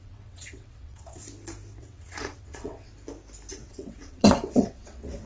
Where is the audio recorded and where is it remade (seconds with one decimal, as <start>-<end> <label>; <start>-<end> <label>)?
0.0-1.2 remade; 1.2-1.8 recorded; 1.8-2.9 remade; 2.9-3.5 recorded; 3.5-5.3 remade